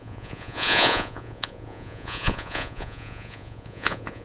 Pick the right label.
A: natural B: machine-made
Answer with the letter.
B